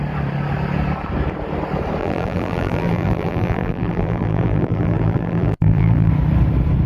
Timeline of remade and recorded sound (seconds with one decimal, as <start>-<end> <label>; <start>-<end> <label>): 0.0-2.0 recorded; 2.0-6.1 remade; 6.1-6.9 recorded